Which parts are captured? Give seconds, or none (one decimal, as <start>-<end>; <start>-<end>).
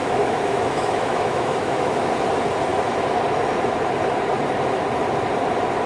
2.1-5.9